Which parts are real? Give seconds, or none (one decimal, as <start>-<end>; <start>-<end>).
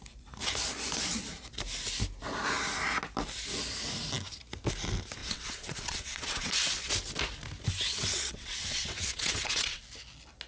0.0-5.2; 6.9-7.9; 9.8-10.5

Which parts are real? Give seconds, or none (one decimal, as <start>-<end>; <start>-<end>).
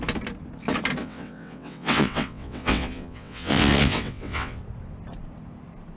0.0-1.0; 4.6-6.0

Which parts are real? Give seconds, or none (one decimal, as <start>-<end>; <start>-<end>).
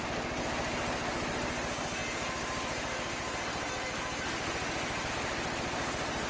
0.0-6.3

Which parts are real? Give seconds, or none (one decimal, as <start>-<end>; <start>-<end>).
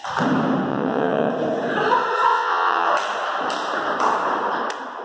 0.0-0.7; 1.3-2.3; 2.9-5.0